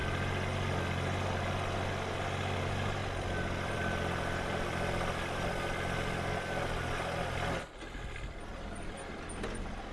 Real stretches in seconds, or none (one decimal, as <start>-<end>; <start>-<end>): 0.0-3.0; 6.3-8.5; 9.2-9.9